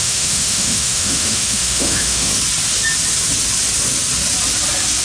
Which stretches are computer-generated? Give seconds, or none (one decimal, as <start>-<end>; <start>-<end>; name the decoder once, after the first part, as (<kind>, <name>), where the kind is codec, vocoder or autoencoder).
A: 0.0-2.3 (autoencoder, DAC-VAE)